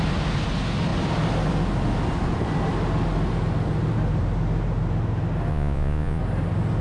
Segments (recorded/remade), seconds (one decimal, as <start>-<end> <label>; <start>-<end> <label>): 0.0-5.5 recorded; 5.5-6.2 remade; 6.2-6.8 recorded